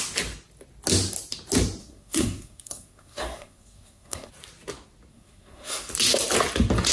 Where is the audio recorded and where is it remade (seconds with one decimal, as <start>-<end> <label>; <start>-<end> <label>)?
0.0-1.8 recorded; 1.8-4.3 remade; 4.3-5.1 recorded; 5.1-5.9 remade; 5.9-6.9 recorded